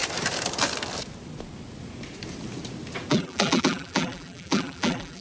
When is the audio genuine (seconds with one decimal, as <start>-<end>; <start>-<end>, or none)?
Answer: 0.0-3.1